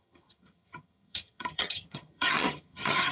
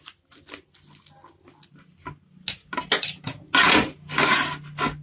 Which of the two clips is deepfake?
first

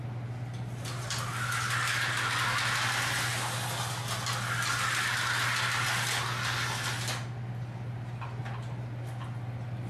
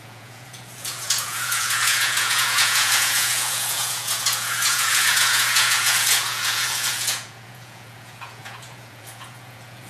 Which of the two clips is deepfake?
second